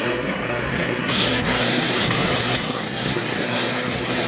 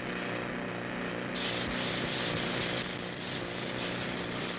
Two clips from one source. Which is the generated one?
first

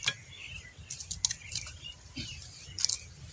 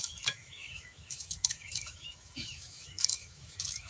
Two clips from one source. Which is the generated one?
second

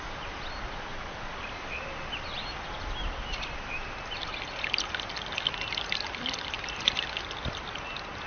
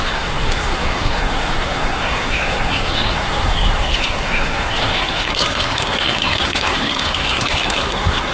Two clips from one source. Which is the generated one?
second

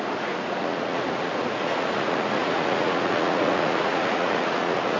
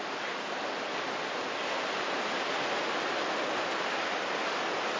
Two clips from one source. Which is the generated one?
first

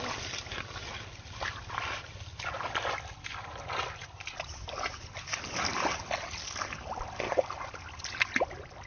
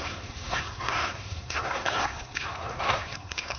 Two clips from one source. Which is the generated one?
second